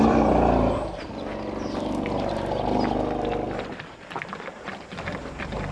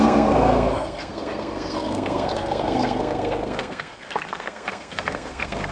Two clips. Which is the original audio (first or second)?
first